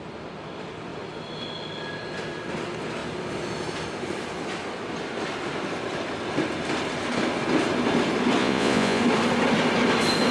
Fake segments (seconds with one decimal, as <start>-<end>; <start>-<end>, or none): 8.4-9.0